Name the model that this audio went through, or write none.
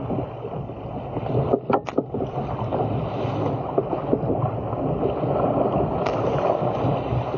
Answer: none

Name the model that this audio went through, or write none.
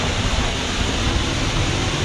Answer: none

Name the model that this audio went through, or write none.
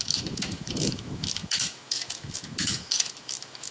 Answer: autoencoder, DAC-VAE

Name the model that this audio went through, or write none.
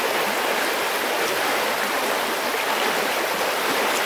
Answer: none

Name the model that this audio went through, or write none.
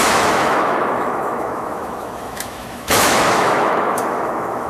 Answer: autoencoder, DAC-VAE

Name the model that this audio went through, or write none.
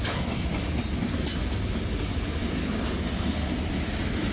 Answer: none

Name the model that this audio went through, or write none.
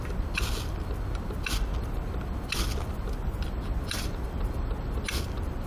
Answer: none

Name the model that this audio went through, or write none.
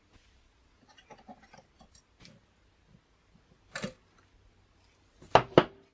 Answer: none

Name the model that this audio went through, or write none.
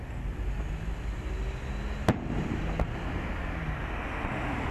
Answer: none